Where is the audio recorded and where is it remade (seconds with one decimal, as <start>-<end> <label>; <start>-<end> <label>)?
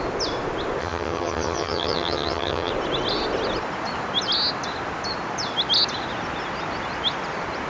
0.0-0.8 recorded; 0.8-2.7 remade; 2.7-7.7 recorded